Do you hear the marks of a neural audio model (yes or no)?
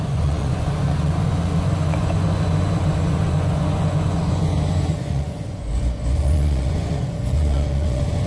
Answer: yes